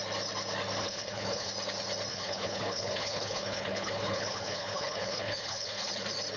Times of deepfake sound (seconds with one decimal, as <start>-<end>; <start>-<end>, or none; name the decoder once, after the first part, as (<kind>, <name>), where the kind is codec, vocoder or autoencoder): 0.8-1.5 (codec, HILCodec); 2.1-5.9